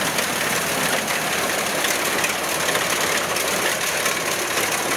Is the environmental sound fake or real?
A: real